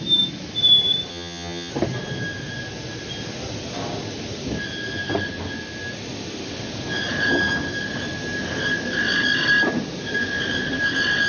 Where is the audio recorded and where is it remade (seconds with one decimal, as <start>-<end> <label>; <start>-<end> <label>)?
0.0-1.1 recorded; 1.1-1.7 remade; 1.7-11.3 recorded